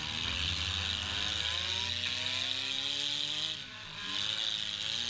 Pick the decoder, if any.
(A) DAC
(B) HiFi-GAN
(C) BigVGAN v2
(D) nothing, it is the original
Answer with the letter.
D